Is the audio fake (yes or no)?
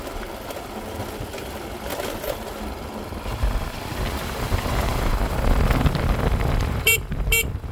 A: no